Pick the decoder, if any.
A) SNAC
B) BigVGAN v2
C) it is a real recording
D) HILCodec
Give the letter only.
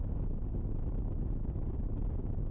C